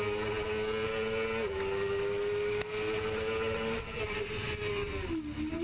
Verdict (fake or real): real